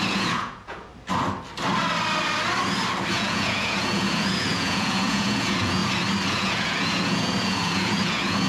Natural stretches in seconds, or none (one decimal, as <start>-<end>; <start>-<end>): 0.9-3.1; 5.8-6.3